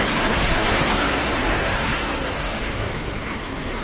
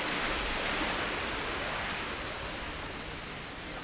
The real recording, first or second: second